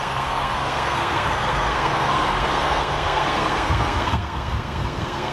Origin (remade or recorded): remade